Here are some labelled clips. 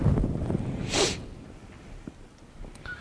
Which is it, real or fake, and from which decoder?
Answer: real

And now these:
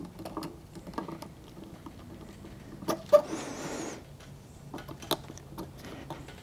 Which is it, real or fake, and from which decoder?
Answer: real